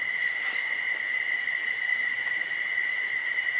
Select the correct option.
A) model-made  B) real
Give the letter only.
A